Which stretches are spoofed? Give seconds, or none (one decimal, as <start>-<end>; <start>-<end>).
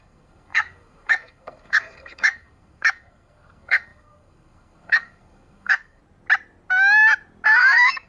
0.0-6.0; 7.6-8.1